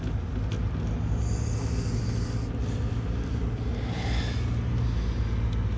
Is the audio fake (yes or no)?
no